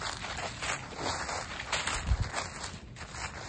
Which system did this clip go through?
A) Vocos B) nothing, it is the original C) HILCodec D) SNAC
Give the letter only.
B